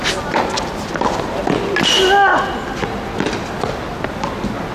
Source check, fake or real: real